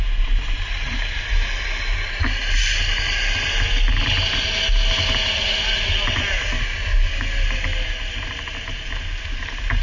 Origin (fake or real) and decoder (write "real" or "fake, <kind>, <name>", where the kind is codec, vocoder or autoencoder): real